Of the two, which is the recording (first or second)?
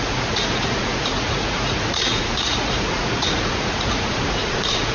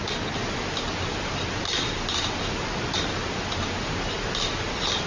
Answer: second